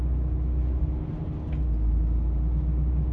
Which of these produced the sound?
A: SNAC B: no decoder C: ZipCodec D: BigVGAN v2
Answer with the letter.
B